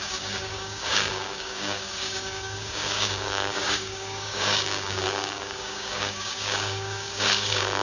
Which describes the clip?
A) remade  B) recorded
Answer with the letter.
A